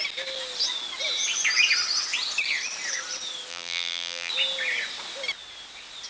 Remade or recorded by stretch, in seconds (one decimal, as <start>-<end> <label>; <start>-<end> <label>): 0.0-3.5 recorded; 3.5-4.3 remade; 4.3-6.1 recorded